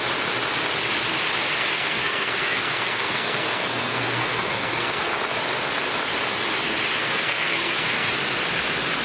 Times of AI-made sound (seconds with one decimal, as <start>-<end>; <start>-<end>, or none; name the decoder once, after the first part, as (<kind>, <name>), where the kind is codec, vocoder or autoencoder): 1.5-5.1 (codec, SNAC); 7.0-8.1